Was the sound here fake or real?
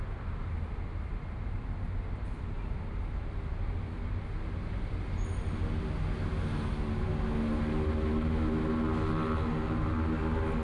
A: real